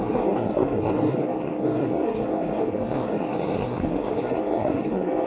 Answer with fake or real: fake